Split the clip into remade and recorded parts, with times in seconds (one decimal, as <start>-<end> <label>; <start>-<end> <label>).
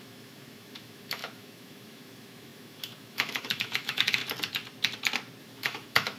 0.0-4.2 remade; 4.2-5.4 recorded; 5.4-6.2 remade